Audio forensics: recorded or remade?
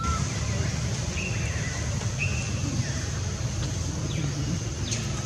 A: recorded